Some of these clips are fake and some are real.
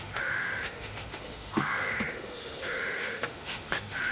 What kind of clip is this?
fake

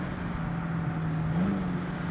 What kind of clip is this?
real